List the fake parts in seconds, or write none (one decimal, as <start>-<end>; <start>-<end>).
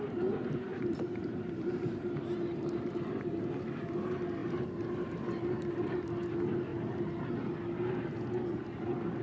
0.7-3.4; 6.7-7.3